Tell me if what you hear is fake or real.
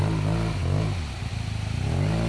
real